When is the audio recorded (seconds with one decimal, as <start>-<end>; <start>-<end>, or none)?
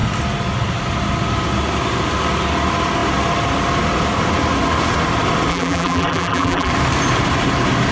0.0-5.5; 6.7-7.9